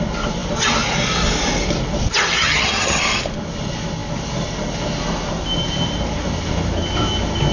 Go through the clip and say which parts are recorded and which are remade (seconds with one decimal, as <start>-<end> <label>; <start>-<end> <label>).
0.0-2.4 recorded; 2.4-3.0 remade; 3.0-7.5 recorded